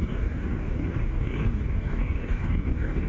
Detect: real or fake fake